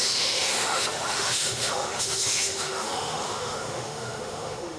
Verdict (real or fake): fake